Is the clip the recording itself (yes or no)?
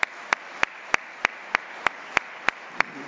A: yes